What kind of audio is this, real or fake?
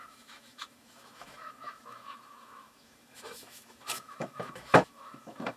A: fake